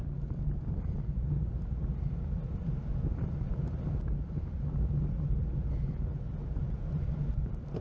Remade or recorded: remade